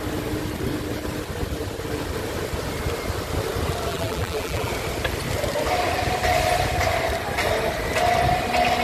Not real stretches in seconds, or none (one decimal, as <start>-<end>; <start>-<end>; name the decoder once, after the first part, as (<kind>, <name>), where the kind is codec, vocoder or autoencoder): 3.9-4.7 (vocoder, BigVGAN v2)